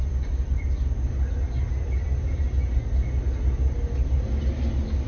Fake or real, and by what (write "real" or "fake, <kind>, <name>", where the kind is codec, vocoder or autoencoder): real